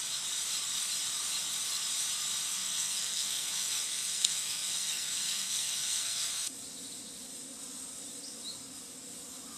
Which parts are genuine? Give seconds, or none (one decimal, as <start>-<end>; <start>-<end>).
0.0-2.5; 6.5-9.6